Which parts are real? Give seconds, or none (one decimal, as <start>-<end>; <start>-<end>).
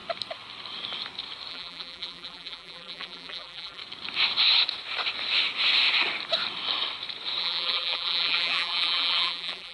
0.0-1.5; 3.8-7.4